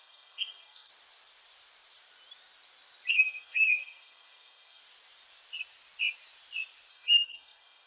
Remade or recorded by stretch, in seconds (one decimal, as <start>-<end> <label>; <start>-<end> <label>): 0.0-0.9 remade; 0.9-3.1 recorded; 3.1-4.8 remade; 4.8-6.9 recorded; 6.9-7.9 remade